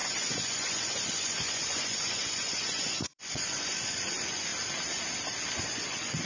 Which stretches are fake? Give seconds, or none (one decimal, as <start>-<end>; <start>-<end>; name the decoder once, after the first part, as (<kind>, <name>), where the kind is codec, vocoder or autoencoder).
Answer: 0.0-4.5 (vocoder, Vocos); 5.6-6.3